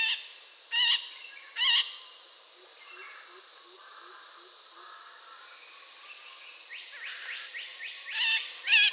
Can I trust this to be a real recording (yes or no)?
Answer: yes